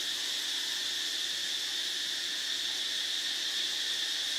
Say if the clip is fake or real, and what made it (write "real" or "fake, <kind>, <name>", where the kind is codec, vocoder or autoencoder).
real